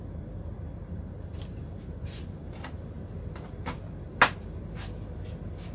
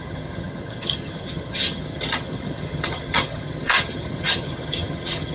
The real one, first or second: first